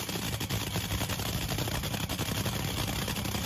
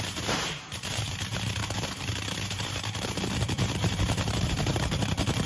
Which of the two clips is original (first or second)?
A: first